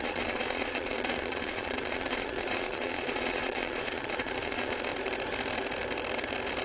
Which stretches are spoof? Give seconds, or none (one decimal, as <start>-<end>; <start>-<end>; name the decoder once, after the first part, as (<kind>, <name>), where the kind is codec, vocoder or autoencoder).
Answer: 0.0-4.9 (vocoder, Vocos)